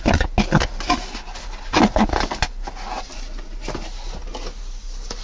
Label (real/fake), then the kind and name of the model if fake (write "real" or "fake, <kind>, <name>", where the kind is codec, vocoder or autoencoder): real